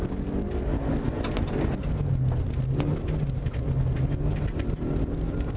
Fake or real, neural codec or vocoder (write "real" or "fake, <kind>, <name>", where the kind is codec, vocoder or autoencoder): real